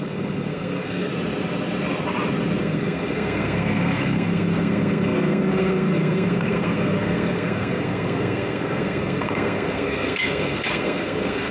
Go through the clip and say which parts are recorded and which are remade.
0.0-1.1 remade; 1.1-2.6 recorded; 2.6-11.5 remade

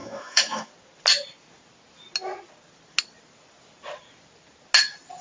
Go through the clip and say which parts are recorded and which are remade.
0.0-0.7 remade; 0.7-5.2 recorded

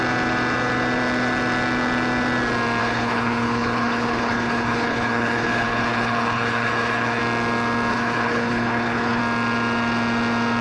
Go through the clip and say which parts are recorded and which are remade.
0.0-2.8 recorded; 2.8-7.2 remade; 7.2-7.9 recorded; 7.9-9.2 remade; 9.2-10.6 recorded

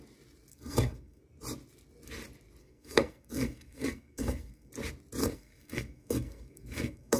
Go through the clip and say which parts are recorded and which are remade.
0.0-0.5 recorded; 0.5-1.2 remade; 1.2-2.6 recorded; 2.6-4.7 remade; 4.7-5.2 recorded; 5.2-7.2 remade

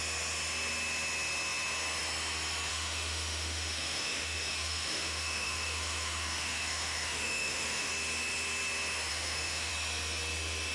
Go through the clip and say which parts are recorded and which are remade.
0.0-2.7 recorded; 2.7-7.9 remade; 7.9-9.1 recorded; 9.1-9.7 remade; 9.7-10.7 recorded

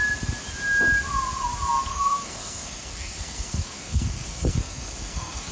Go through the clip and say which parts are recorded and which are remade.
0.0-1.9 recorded; 1.9-5.5 remade

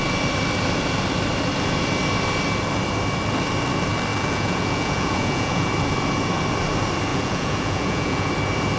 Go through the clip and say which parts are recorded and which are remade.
0.0-4.1 recorded; 4.1-5.7 remade; 5.7-7.1 recorded; 7.1-8.3 remade; 8.3-8.8 recorded

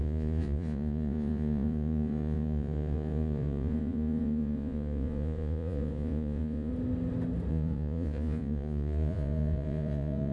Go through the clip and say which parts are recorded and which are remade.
0.0-6.7 remade; 6.7-7.5 recorded; 7.5-10.3 remade